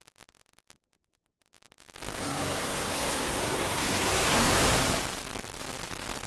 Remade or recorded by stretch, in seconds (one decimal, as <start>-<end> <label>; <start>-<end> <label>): 0.0-2.2 recorded; 2.2-4.6 remade; 4.6-6.3 recorded